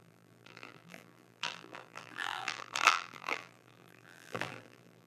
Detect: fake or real fake